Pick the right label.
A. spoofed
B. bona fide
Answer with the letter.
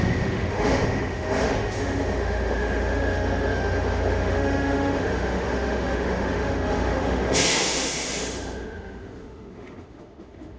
A